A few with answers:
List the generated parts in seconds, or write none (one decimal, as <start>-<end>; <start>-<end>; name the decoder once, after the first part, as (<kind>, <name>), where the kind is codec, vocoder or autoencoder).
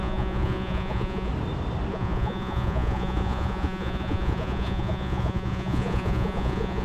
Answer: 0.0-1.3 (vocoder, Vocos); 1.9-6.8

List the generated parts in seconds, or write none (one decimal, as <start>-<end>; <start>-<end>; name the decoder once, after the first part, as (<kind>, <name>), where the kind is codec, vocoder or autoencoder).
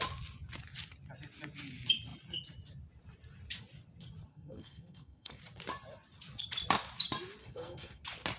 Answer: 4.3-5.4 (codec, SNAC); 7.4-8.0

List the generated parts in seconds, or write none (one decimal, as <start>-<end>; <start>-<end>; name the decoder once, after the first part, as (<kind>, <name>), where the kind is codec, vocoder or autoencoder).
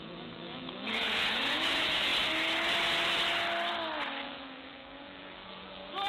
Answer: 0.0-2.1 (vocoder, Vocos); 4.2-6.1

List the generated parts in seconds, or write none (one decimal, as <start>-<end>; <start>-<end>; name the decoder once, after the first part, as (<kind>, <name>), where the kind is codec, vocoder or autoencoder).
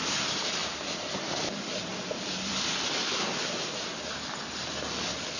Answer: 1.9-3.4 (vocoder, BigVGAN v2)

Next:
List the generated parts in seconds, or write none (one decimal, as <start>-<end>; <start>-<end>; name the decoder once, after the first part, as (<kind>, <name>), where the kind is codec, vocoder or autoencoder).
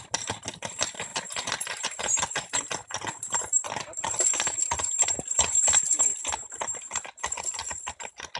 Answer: none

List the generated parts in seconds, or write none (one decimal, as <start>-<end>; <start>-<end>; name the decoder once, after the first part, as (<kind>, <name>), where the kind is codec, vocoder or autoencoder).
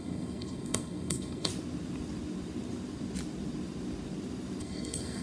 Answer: 0.0-1.5 (codec, SNAC); 4.6-5.2